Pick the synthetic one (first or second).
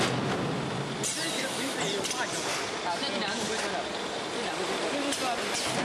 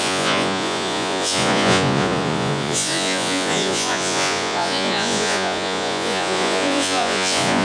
second